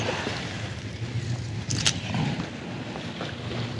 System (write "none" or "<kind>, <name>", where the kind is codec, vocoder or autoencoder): none